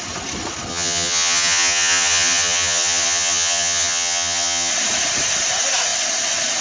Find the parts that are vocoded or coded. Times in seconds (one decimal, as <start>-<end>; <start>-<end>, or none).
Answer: 0.7-4.7